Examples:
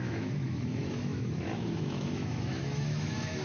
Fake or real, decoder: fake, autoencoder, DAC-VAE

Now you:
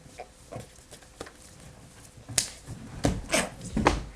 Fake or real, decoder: real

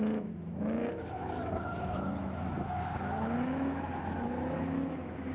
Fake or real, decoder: fake, autoencoder, DAC-VAE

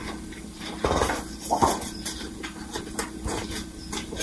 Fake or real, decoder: real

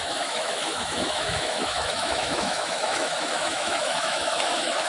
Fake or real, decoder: fake, autoencoder, DAC-VAE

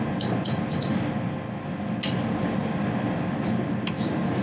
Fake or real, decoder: real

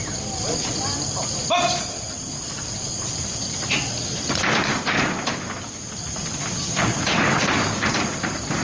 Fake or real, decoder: real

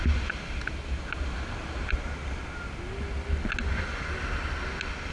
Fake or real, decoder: real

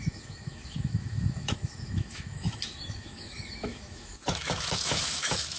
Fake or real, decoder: fake, autoencoder, DAC-VAE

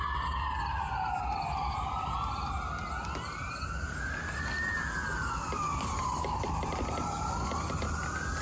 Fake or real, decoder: real